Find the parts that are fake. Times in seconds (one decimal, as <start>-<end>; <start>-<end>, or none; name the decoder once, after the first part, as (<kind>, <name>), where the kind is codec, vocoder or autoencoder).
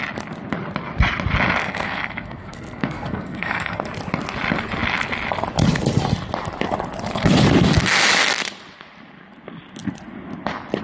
1.6-3.8 (codec, SNAC)